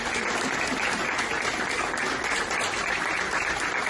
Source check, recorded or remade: recorded